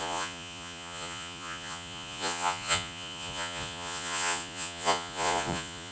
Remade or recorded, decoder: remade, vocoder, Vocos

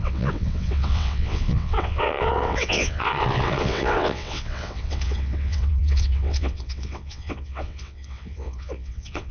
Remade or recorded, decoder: remade, vocoder, WaveNeXt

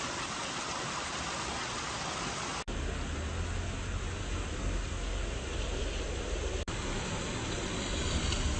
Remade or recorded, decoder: recorded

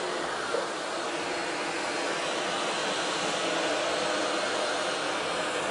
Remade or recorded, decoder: recorded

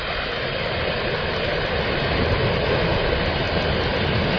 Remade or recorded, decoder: recorded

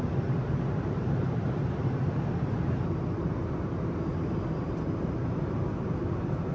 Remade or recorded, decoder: recorded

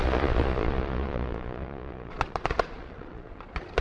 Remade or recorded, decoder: remade, vocoder, Vocos